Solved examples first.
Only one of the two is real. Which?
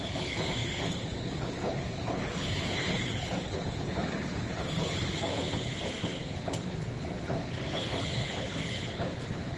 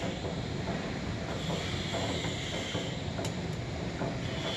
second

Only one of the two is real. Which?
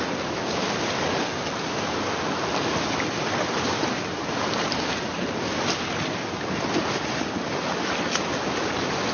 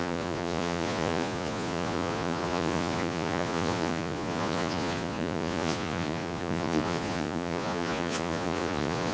first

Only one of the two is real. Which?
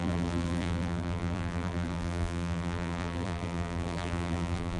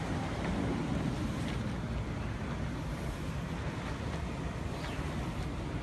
second